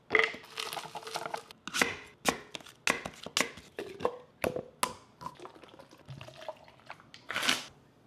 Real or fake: real